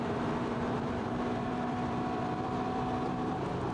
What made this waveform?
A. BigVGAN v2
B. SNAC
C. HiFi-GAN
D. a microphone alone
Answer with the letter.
A